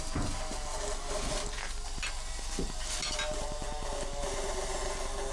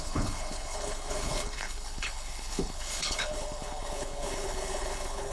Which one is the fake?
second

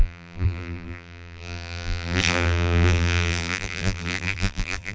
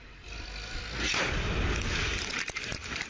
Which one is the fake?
first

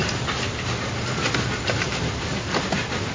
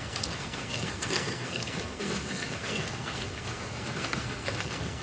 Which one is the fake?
second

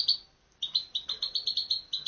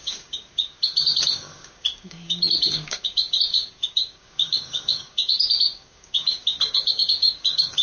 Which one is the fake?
second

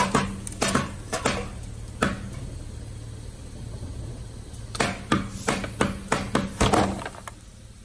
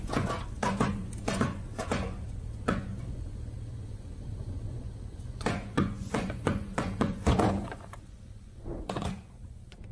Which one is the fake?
second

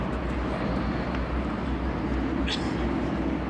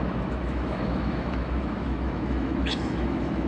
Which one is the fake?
second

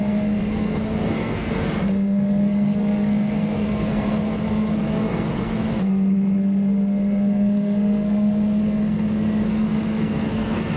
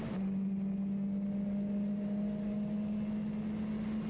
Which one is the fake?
first